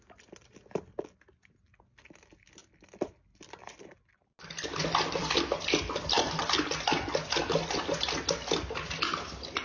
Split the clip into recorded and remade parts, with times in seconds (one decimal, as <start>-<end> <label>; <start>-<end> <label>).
0.0-2.6 recorded; 2.6-3.8 remade; 3.8-9.6 recorded